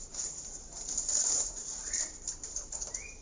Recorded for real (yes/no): no